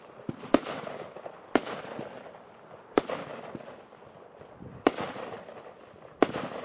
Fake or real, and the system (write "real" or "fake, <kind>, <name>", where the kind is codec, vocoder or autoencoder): real